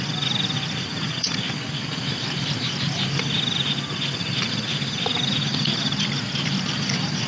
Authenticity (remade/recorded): remade